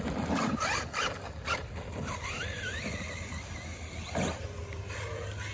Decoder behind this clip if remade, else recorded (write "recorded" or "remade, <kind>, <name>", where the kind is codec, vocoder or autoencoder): recorded